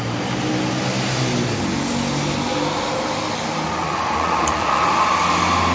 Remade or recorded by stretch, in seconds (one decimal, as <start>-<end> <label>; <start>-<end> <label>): 0.0-3.8 recorded; 3.8-4.9 remade; 4.9-5.7 recorded